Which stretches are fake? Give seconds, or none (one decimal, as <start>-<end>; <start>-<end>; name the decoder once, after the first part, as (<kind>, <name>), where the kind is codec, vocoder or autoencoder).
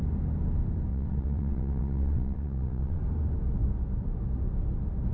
0.9-3.0 (vocoder, WaveNeXt)